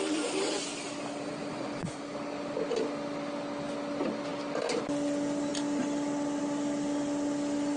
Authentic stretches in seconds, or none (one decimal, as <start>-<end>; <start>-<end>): 0.0-1.4; 2.0-7.8